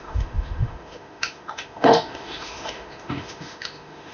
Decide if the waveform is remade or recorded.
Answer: remade